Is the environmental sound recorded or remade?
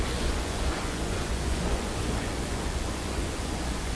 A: remade